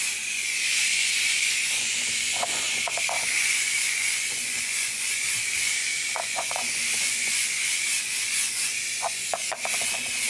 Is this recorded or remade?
remade